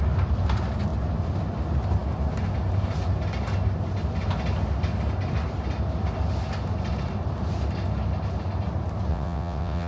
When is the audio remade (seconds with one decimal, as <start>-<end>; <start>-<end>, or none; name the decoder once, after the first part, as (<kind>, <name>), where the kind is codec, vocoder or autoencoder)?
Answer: 9.1-9.9 (vocoder, WaveNeXt)